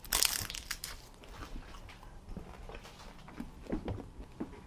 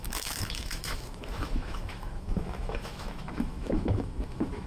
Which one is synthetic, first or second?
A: second